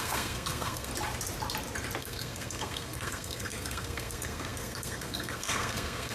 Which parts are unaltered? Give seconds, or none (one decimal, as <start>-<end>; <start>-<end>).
0.9-2.0